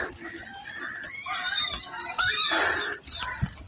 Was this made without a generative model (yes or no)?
yes